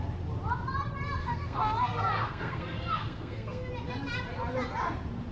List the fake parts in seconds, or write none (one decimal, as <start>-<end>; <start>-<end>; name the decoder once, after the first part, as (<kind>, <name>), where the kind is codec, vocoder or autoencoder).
1.2-3.7 (codec, SNAC)